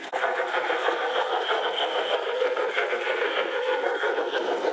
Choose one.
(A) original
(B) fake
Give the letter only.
B